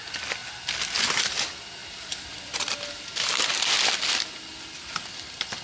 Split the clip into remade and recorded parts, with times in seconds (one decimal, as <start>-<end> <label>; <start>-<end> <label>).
0.0-5.6 recorded